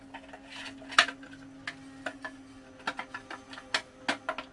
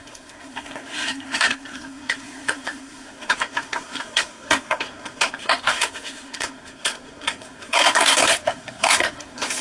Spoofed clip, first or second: second